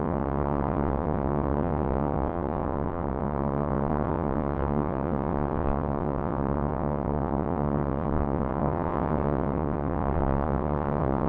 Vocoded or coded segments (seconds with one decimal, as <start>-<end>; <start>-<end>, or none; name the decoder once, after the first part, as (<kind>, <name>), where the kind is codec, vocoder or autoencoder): 0.0-11.3 (vocoder, WaveNeXt)